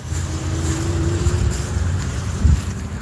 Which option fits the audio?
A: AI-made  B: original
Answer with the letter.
A